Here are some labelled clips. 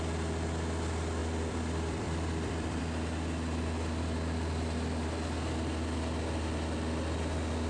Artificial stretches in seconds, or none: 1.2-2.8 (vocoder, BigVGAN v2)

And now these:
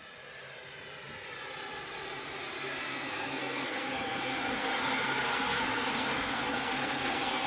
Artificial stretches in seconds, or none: 2.9-7.5 (codec, SNAC)

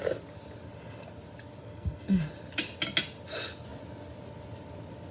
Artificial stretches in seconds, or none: 1.6-2.2 (codec, SNAC)

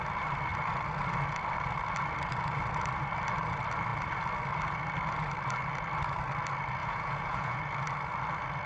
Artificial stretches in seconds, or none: 6.8-7.6 (vocoder, Vocos)

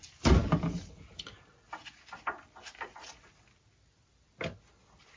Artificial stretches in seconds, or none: none

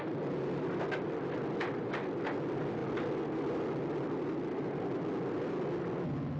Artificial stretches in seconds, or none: none

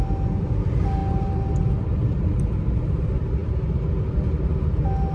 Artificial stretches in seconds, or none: none

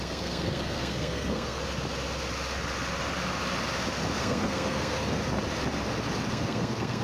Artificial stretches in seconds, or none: 0.0-1.6 (codec, SNAC); 4.2-5.2; 6.3-7.0